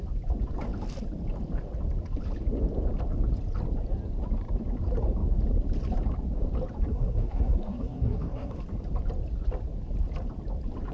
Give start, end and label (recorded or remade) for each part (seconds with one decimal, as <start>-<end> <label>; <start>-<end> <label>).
0.0-6.9 recorded; 6.9-8.6 remade; 8.6-10.9 recorded